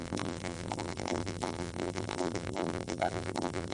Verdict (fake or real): fake